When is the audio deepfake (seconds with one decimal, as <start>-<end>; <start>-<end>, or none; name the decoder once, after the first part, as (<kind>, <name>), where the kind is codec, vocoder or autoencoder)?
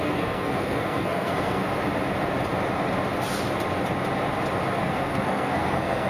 0.0-1.6 (codec, SNAC); 4.8-6.1